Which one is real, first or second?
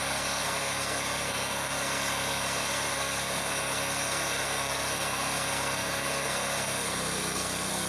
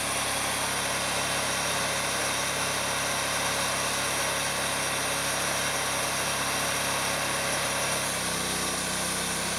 second